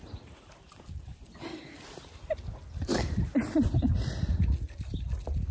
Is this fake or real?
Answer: real